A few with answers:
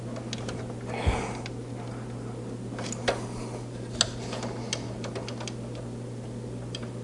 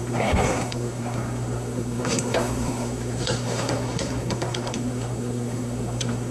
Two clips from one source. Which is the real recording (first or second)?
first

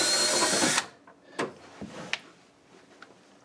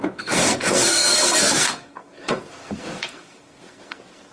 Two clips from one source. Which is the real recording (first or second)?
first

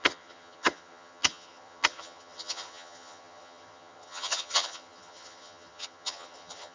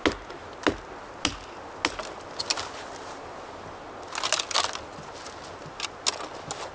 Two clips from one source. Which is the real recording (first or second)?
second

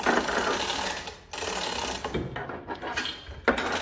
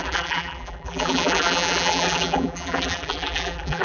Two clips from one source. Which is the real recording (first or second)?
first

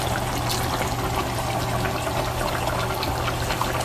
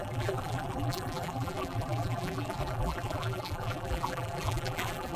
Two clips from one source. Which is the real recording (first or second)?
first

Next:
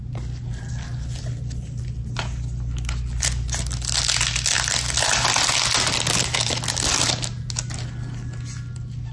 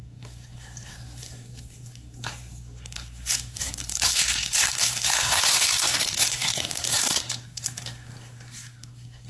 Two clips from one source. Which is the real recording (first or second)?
first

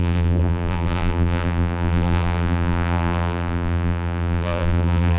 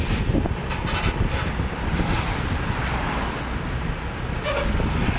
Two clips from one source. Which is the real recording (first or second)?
second